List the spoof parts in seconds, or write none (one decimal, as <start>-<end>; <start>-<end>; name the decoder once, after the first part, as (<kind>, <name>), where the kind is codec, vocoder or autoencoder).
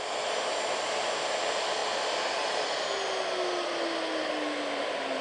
none